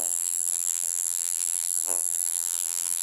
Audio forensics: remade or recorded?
remade